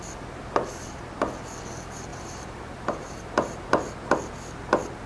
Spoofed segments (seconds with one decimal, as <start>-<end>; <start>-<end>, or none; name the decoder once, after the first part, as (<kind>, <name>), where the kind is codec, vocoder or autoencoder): 2.1-3.7 (vocoder, BigVGAN v2)